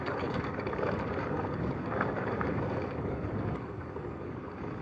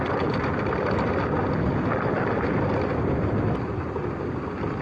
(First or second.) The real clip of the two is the second